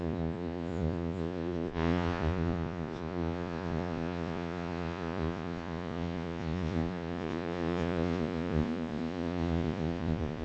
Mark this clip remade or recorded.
remade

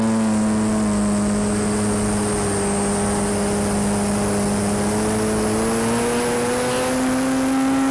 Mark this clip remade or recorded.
recorded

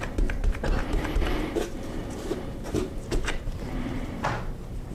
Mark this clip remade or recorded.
remade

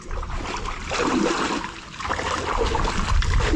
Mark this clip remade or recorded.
recorded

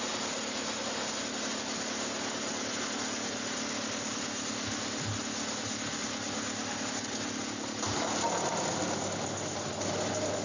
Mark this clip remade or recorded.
recorded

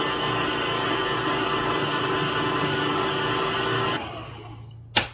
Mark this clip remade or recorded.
recorded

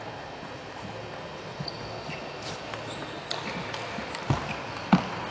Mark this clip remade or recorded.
recorded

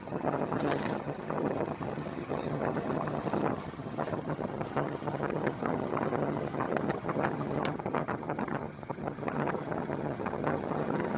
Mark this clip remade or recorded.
remade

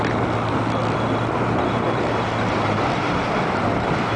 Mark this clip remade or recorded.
recorded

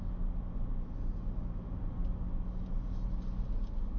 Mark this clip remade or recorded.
recorded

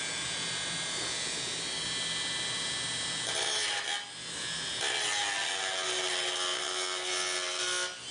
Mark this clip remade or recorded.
recorded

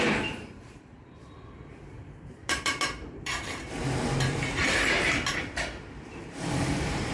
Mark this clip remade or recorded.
remade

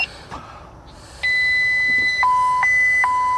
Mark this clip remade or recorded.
recorded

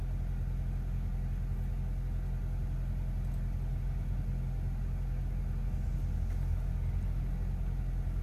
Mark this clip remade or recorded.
recorded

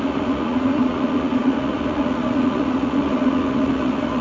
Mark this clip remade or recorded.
remade